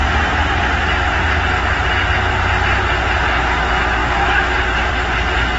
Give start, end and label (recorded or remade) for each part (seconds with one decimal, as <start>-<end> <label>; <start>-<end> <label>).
0.0-4.0 recorded; 4.0-4.5 remade; 4.5-5.6 recorded